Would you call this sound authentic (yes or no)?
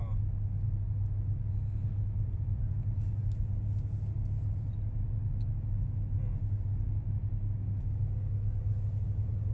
yes